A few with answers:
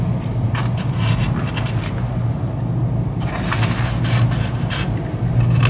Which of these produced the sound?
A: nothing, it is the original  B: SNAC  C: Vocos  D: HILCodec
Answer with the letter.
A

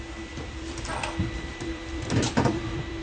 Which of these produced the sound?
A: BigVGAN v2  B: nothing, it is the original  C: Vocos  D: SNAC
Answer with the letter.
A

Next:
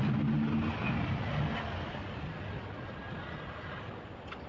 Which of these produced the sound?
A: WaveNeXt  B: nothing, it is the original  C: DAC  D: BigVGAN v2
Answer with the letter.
B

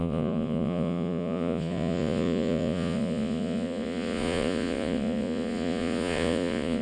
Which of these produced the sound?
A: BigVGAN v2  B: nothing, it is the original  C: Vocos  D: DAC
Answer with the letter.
C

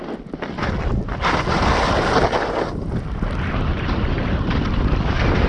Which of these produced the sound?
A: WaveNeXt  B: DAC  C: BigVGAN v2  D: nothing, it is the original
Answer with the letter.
D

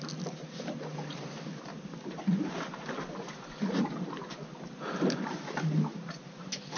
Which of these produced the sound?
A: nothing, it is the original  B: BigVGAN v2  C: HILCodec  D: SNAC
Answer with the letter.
A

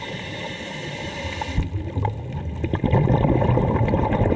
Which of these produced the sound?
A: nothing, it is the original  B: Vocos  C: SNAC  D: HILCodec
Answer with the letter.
A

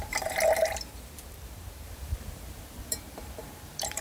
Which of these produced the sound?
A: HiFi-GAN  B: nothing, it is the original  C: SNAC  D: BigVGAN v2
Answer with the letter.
D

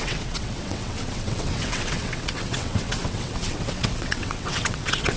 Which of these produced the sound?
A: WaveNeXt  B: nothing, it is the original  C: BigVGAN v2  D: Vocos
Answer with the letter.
A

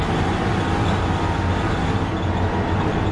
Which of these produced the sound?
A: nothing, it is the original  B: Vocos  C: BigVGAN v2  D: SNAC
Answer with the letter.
A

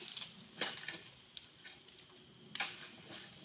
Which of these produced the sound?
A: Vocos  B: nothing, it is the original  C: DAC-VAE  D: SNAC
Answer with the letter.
B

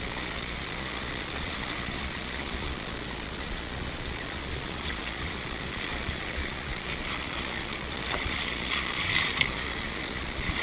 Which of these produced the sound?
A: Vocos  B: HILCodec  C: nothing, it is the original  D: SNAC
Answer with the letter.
A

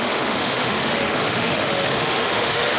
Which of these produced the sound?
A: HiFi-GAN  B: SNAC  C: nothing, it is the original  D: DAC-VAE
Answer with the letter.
D